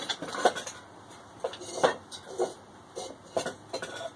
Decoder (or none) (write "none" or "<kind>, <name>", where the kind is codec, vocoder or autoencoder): vocoder, BigVGAN v2